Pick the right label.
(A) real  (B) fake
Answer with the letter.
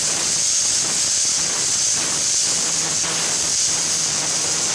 A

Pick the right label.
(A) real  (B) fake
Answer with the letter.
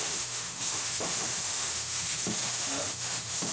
B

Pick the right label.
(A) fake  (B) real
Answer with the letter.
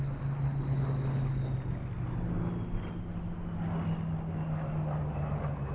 B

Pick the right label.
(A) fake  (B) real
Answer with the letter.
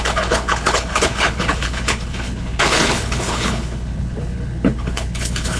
A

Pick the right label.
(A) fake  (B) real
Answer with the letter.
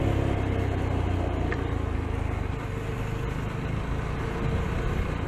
B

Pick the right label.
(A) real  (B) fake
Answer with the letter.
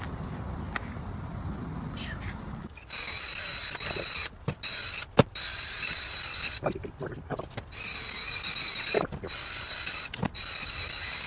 A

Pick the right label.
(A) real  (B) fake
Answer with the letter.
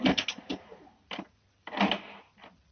A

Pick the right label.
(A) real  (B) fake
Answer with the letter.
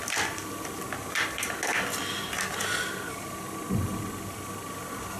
A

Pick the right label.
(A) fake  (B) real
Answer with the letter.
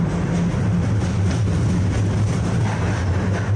B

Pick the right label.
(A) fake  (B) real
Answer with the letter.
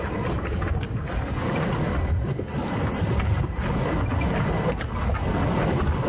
B